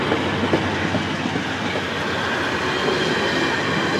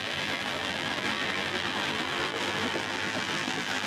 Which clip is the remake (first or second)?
second